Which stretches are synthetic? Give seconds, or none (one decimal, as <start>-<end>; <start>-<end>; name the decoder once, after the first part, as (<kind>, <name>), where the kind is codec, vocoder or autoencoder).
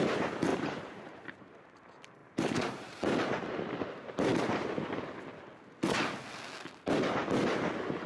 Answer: 0.5-1.5 (vocoder, BigVGAN v2); 2.2-3.0